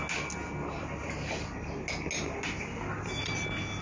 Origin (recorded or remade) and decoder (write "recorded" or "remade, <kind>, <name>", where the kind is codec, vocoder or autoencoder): recorded